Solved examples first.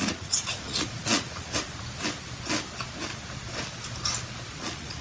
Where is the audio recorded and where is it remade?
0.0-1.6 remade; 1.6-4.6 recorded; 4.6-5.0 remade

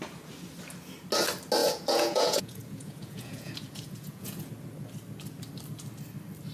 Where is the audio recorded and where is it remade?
0.0-1.6 recorded; 1.6-4.5 remade; 4.5-6.5 recorded

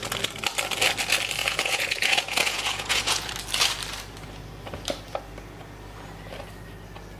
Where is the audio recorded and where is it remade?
0.0-1.4 recorded; 1.4-3.3 remade; 3.3-7.2 recorded